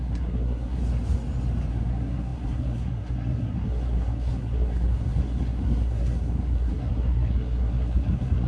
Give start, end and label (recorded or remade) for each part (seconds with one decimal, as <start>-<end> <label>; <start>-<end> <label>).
0.0-0.8 remade; 0.8-1.7 recorded; 1.7-8.5 remade

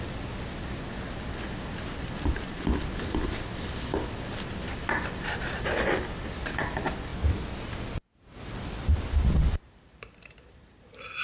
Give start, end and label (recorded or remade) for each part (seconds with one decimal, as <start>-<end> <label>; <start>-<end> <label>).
0.0-7.1 remade; 7.1-9.5 recorded; 9.5-11.2 remade

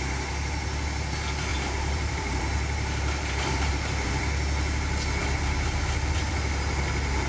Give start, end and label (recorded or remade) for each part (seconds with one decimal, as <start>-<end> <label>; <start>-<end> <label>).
0.0-1.5 recorded; 1.5-4.2 remade; 4.2-7.3 recorded

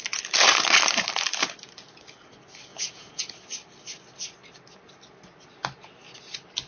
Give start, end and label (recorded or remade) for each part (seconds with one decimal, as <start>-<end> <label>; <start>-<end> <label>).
0.0-2.7 recorded; 2.7-3.2 remade; 3.2-6.7 recorded

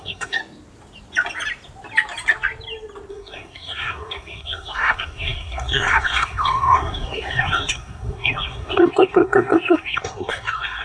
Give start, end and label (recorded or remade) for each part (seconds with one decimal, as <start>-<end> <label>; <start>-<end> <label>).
0.0-0.4 remade; 0.4-3.1 recorded; 3.1-10.8 remade

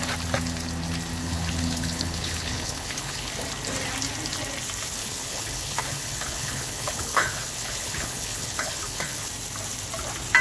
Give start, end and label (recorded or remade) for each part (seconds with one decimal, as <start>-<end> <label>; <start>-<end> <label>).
0.0-1.2 recorded; 1.2-3.3 remade; 3.3-5.0 recorded; 5.0-9.3 remade; 9.3-10.4 recorded